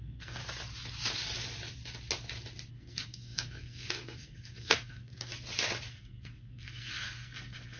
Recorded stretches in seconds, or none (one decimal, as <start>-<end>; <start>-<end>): 0.4-2.7; 5.3-5.9